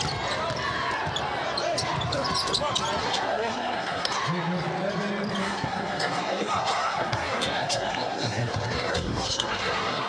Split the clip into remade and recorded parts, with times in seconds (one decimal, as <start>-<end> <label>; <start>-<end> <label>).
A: 0.0-3.0 recorded; 3.0-4.2 remade; 4.2-5.4 recorded; 5.4-10.1 remade